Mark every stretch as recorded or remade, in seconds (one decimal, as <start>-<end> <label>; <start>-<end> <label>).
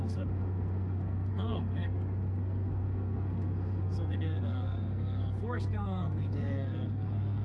0.0-7.4 remade